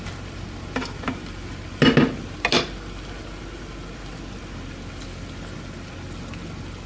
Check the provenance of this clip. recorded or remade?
recorded